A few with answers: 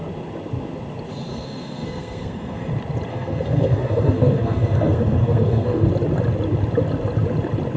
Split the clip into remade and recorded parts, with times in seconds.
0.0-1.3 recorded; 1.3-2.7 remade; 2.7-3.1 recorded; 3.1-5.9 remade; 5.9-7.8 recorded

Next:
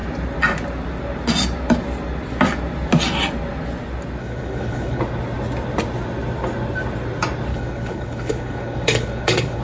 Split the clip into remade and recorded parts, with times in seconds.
0.0-4.2 recorded; 4.2-5.0 remade; 5.0-7.5 recorded; 7.5-9.6 remade